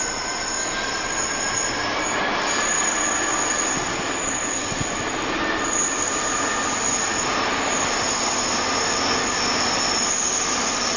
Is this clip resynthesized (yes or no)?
no